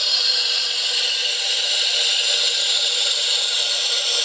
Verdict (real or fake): real